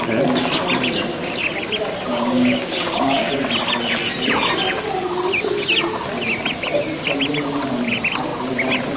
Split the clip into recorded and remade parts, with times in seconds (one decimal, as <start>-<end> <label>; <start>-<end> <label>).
0.0-2.1 recorded; 2.1-3.3 remade; 3.3-9.0 recorded